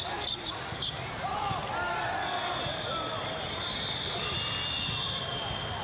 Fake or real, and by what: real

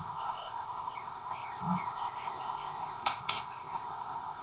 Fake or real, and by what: fake, codec, ZipCodec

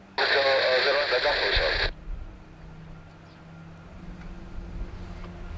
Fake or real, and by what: real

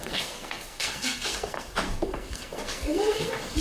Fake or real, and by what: fake, codec, SNAC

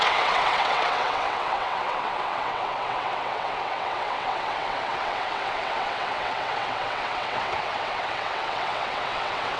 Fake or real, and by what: fake, vocoder, WaveNeXt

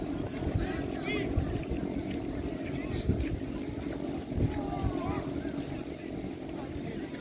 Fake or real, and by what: real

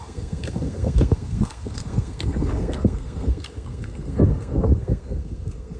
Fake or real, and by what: fake, codec, SNAC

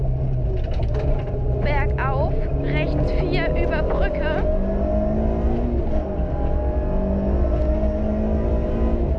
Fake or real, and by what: real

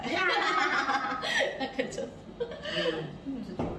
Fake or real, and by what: real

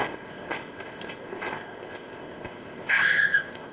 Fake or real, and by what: fake, codec, ZipCodec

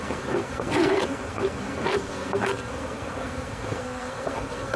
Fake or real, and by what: fake, codec, SNAC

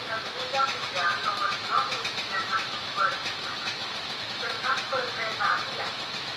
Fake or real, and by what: fake, autoencoder, DAC-VAE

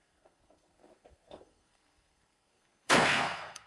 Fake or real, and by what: fake, codec, SNAC